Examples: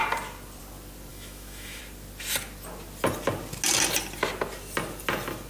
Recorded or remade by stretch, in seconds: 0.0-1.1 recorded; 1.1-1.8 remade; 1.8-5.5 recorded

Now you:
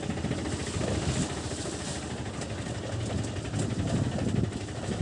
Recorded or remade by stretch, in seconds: 0.0-5.0 recorded